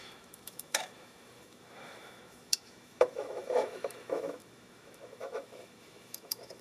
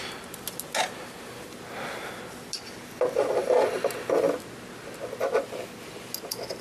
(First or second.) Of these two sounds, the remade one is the first